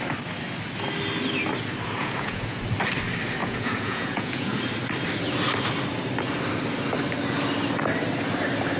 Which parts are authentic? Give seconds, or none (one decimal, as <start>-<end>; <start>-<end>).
0.0-2.0; 2.6-3.4; 4.6-8.8